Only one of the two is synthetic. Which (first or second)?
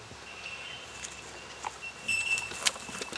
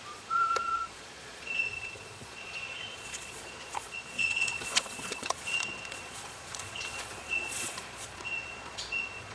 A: second